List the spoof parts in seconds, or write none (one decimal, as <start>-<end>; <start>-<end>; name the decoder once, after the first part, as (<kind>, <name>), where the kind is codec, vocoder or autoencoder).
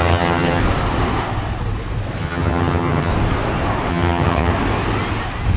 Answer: 0.0-0.6 (vocoder, HiFi-GAN); 2.2-3.1; 3.9-4.5